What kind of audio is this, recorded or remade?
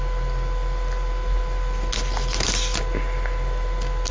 recorded